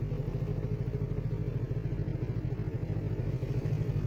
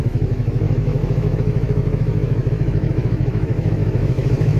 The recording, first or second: first